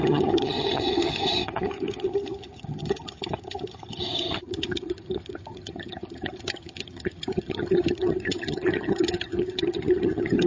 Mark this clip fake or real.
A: fake